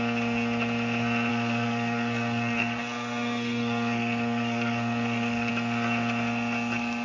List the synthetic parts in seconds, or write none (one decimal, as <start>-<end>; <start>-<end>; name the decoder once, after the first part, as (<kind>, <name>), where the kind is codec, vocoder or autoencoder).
1.3-5.5 (codec, SNAC)